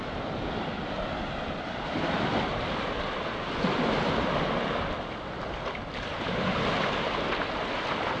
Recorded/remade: recorded